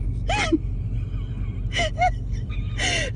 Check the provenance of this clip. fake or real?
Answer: real